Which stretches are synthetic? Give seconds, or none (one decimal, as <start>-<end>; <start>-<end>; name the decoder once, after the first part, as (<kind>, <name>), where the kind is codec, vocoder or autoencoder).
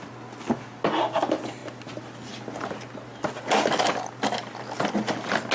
none